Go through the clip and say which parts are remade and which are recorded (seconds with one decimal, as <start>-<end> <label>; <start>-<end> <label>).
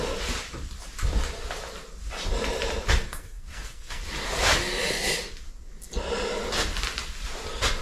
0.0-3.0 recorded; 3.0-4.0 remade; 4.0-7.8 recorded